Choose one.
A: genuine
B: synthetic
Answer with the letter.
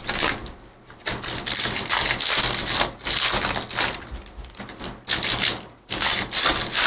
A